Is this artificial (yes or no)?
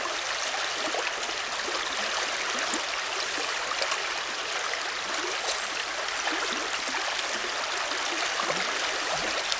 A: no